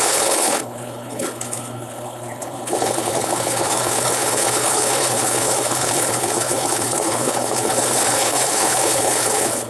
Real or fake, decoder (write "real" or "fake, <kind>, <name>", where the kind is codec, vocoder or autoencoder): fake, codec, HILCodec